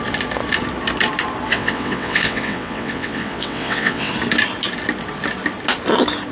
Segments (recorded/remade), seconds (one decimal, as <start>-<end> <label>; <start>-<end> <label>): 0.0-1.5 recorded; 1.5-4.1 remade; 4.1-6.3 recorded